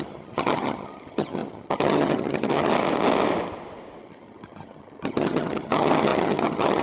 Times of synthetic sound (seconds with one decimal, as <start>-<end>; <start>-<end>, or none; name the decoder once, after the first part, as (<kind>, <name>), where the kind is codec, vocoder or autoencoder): 0.0-2.7 (vocoder, HiFi-GAN); 4.0-6.8